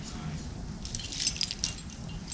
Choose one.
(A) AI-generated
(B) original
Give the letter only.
B